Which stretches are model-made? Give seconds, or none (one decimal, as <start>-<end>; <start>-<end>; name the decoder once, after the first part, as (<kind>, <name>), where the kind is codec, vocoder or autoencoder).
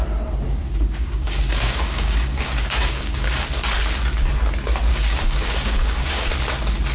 0.6-3.5 (codec, DAC); 4.9-6.3